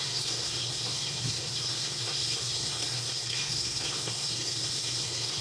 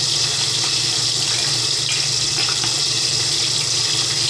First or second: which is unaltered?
second